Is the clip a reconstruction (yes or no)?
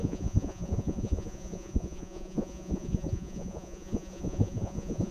yes